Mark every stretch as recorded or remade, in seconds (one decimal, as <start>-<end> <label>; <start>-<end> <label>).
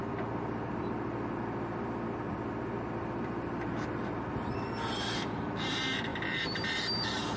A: 0.0-7.4 recorded